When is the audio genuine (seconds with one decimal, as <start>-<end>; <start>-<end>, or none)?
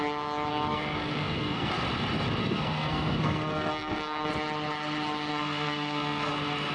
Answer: 0.0-0.5; 1.7-2.4; 4.3-5.3; 6.3-6.7